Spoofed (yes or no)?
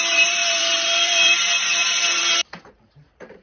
yes